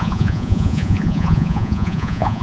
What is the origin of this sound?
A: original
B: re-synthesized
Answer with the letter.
B